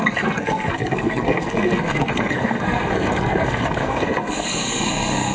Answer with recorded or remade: remade